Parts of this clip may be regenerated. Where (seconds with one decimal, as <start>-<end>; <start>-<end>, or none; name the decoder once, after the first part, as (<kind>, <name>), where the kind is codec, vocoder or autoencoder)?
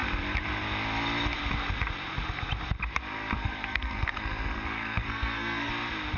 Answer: 3.4-5.7 (codec, SNAC)